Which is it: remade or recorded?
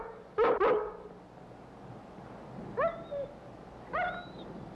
recorded